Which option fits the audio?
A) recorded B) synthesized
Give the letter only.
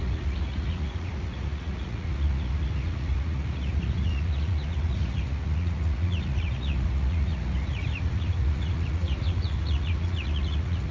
B